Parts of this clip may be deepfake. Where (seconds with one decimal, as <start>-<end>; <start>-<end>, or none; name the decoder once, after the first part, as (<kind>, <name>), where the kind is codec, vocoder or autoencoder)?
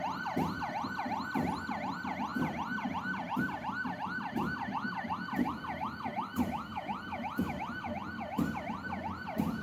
none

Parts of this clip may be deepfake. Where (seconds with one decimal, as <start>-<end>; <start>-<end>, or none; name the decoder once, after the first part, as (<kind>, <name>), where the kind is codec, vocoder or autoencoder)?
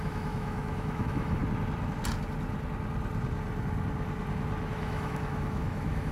0.0-1.4 (autoencoder, DAC-VAE); 4.7-6.1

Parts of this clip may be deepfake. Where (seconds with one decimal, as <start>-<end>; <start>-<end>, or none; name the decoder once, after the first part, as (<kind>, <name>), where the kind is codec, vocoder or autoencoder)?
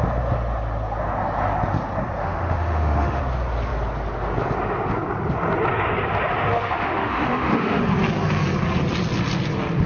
2.2-3.2 (autoencoder, DAC-VAE); 6.5-7.8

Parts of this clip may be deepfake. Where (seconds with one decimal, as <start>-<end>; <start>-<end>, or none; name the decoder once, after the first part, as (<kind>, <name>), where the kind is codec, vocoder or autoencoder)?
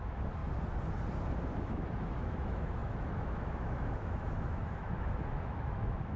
0.0-0.4 (autoencoder, DAC-VAE); 1.6-6.2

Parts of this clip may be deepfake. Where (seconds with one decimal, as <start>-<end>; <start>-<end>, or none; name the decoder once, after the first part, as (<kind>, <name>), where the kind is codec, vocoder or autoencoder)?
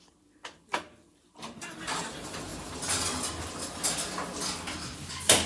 none